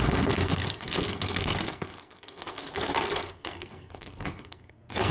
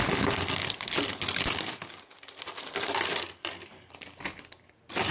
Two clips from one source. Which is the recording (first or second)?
second